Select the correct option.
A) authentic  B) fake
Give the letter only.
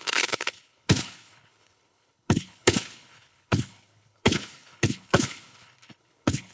B